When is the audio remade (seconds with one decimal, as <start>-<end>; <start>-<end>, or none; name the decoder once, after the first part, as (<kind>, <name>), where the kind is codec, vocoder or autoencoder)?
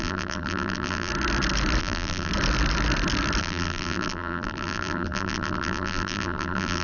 0.0-1.1 (vocoder, BigVGAN v2); 1.8-2.3; 3.4-6.8